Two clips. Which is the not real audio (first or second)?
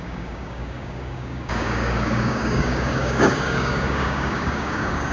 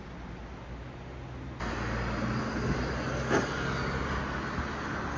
first